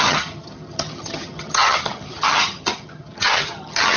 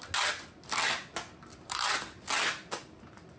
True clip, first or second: second